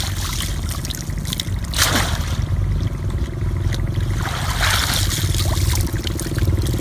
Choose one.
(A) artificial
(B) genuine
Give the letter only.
B